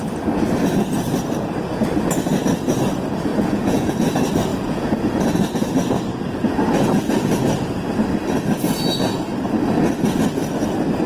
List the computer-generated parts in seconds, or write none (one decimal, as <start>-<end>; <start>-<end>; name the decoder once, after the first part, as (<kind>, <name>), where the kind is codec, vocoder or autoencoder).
3.3-3.9 (vocoder, Vocos); 4.5-5.0

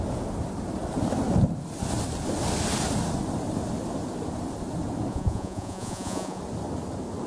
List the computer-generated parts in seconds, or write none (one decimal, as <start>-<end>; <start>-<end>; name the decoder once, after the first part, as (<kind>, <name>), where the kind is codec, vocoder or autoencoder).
5.1-6.4 (vocoder, Vocos)

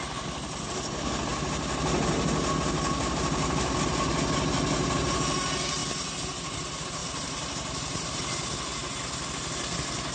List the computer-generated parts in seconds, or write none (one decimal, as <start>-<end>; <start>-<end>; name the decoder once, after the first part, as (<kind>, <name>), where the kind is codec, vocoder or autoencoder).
7.0-8.2 (vocoder, BigVGAN v2)

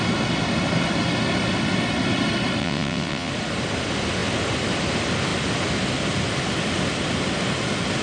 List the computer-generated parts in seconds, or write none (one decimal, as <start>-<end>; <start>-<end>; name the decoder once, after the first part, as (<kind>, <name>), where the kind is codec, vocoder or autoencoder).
2.6-3.3 (vocoder, WaveNeXt)